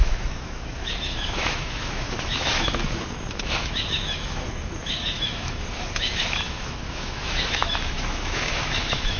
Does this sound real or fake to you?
fake